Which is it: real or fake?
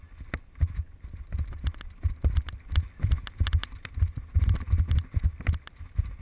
real